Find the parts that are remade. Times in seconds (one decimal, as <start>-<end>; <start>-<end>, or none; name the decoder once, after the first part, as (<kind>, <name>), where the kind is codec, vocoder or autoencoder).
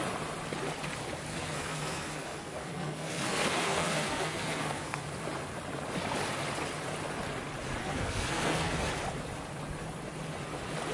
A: 1.3-5.0 (codec, SNAC); 7.8-8.9